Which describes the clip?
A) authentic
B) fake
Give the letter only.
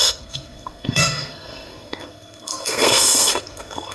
B